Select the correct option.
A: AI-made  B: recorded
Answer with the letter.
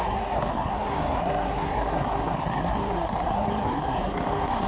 A